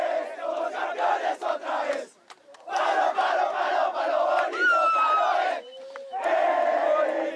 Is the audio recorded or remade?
recorded